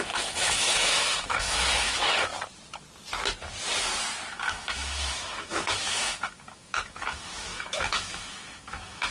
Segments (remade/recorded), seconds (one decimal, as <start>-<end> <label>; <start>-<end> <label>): 0.0-2.3 remade; 2.3-4.3 recorded; 4.3-9.1 remade